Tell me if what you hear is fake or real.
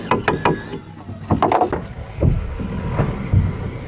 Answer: real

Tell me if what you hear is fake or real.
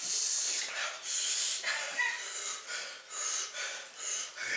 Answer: real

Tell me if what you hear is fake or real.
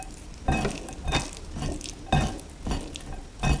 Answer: real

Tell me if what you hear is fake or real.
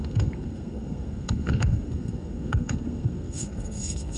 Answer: fake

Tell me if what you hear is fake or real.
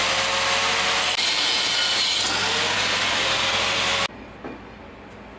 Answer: real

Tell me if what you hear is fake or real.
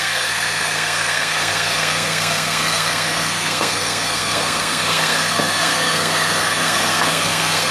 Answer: fake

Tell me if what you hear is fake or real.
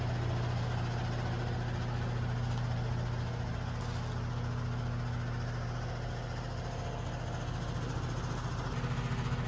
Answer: real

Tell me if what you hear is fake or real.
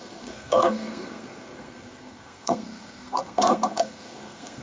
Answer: fake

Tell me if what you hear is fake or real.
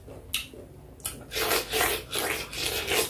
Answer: real